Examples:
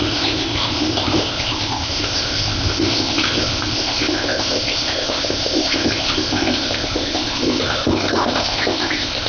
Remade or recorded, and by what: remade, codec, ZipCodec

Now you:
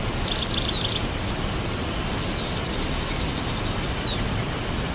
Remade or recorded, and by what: recorded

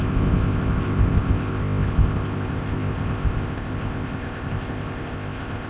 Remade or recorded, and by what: remade, codec, ZipCodec